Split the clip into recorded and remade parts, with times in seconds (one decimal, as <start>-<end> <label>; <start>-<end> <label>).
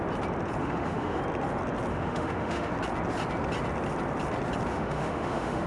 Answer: 0.0-0.6 recorded; 0.6-1.2 remade; 1.2-1.9 recorded; 1.9-2.7 remade; 2.7-4.7 recorded; 4.7-5.7 remade